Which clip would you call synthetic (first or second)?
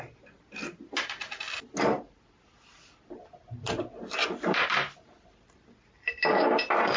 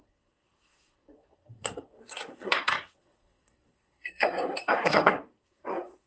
second